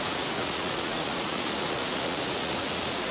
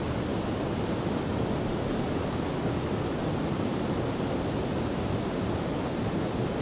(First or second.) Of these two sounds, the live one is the second